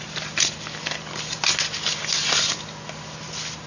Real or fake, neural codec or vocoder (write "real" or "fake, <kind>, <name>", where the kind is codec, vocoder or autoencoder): real